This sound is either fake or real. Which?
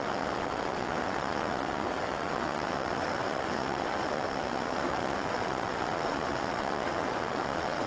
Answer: fake